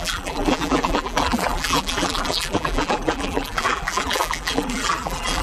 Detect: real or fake fake